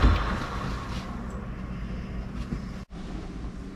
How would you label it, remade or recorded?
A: recorded